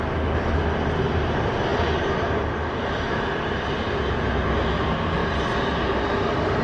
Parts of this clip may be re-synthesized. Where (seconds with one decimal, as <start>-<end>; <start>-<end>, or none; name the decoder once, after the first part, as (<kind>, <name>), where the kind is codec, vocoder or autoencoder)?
none